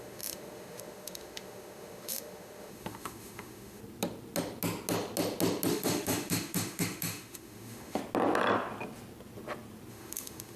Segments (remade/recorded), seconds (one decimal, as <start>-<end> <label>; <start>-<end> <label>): 0.0-3.8 remade; 3.8-5.7 recorded; 5.7-8.0 remade; 8.0-9.9 recorded; 9.9-10.6 remade